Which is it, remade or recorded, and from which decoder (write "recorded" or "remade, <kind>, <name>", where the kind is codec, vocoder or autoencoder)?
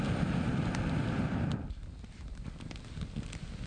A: recorded